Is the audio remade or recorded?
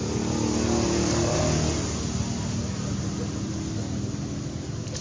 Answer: recorded